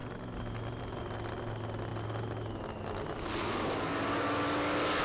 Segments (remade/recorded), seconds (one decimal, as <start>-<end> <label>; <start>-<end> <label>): 0.0-5.0 recorded